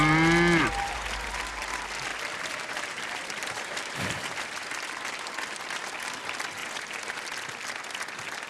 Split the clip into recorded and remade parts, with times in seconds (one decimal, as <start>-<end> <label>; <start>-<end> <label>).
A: 0.0-2.1 recorded; 2.1-4.2 remade; 4.2-6.6 recorded; 6.6-7.2 remade; 7.2-8.5 recorded